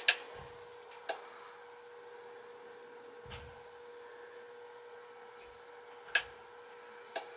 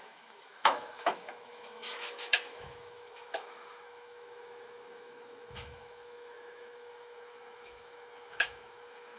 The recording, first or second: first